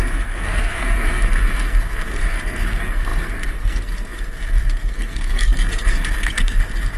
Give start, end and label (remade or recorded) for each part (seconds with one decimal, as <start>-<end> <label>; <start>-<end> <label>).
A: 0.0-7.0 remade

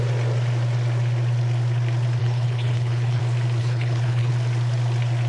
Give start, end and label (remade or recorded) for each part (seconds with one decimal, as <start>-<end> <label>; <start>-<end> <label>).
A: 0.0-2.2 recorded; 2.2-3.2 remade; 3.2-3.6 recorded; 3.6-4.3 remade; 4.3-5.3 recorded

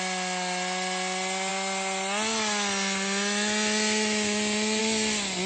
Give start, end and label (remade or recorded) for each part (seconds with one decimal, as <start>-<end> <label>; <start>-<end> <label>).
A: 0.0-5.5 recorded

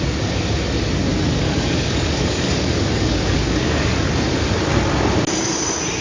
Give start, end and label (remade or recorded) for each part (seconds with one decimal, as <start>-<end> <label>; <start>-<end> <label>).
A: 0.0-1.1 recorded; 1.1-4.1 remade; 4.1-6.0 recorded

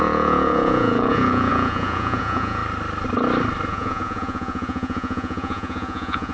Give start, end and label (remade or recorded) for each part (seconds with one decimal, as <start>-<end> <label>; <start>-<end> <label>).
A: 0.0-2.6 remade; 2.6-3.7 recorded; 3.7-6.3 remade